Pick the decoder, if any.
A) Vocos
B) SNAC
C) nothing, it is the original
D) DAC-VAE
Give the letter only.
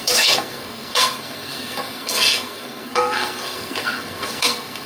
B